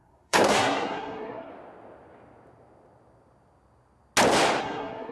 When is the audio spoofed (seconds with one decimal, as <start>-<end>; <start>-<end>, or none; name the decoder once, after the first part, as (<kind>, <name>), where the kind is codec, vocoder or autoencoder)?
0.0-1.5 (codec, SNAC); 4.6-5.1